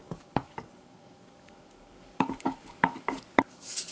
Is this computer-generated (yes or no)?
yes